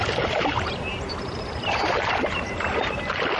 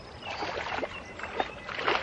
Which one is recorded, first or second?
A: second